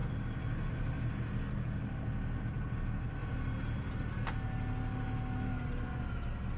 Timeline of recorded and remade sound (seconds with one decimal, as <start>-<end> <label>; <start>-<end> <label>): 0.0-6.6 recorded